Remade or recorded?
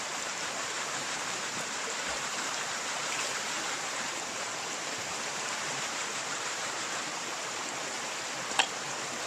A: remade